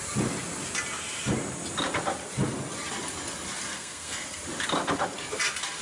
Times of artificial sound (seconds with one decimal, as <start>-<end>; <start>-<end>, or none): 3.7-4.4